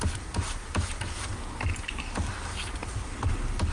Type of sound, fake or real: real